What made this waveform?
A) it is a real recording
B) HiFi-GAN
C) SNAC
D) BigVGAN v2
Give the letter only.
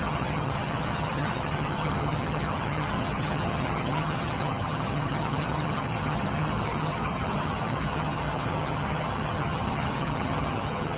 B